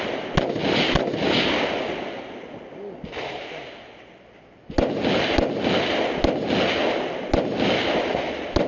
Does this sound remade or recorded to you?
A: recorded